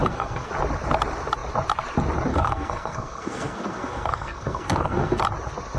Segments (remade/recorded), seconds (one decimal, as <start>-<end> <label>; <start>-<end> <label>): 0.0-0.5 remade; 0.5-2.3 recorded; 2.3-5.2 remade; 5.2-5.8 recorded